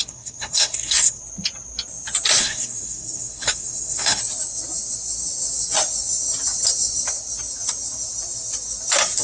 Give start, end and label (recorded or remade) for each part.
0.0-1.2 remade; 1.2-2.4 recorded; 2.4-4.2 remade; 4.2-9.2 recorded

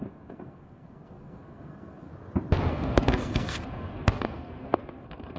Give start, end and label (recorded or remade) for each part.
0.0-2.1 remade; 2.1-2.7 recorded; 2.7-5.4 remade

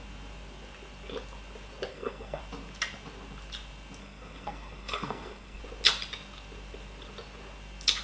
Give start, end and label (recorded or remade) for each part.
0.0-1.9 recorded; 1.9-2.4 remade; 2.4-4.0 recorded; 4.0-5.6 remade; 5.6-8.0 recorded

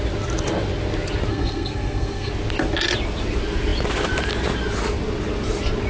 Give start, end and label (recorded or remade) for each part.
0.0-1.3 recorded; 1.3-2.3 remade; 2.3-5.9 recorded

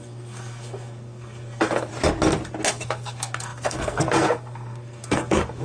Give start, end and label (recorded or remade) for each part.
0.0-1.9 remade; 1.9-2.7 recorded; 2.7-5.6 remade

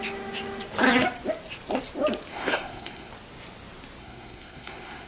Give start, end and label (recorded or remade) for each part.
0.0-2.3 recorded; 2.3-3.1 remade; 3.1-4.0 recorded; 4.0-5.1 remade

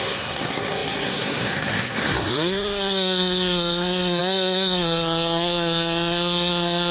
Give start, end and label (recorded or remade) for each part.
0.0-6.9 remade

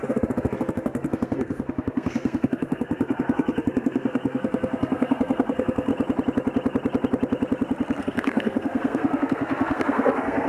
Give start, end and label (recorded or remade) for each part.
0.0-5.9 remade; 5.9-8.0 recorded; 8.0-10.5 remade